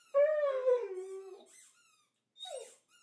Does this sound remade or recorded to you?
recorded